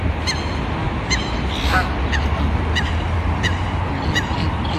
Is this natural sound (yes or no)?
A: yes